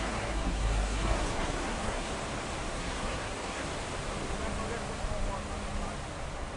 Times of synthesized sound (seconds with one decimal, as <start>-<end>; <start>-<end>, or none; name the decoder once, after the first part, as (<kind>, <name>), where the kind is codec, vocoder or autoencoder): 0.0-2.1 (codec, SNAC); 2.7-3.7